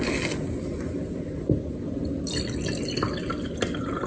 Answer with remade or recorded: recorded